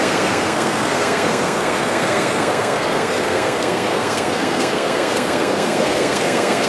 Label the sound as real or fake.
fake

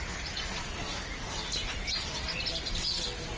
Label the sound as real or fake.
real